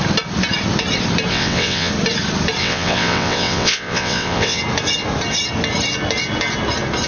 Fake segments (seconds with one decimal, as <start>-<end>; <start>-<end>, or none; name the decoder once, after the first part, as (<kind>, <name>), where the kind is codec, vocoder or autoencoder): 1.3-1.9 (vocoder, WaveNeXt); 2.6-4.6